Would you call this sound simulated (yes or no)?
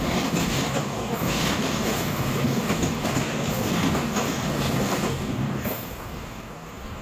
yes